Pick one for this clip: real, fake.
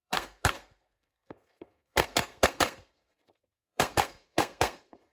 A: fake